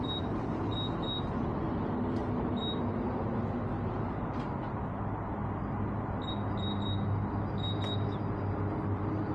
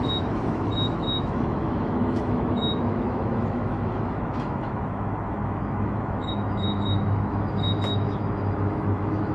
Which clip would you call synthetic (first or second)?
second